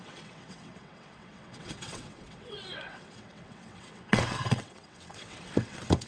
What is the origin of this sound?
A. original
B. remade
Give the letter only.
B